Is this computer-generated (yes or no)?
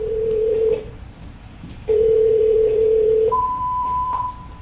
yes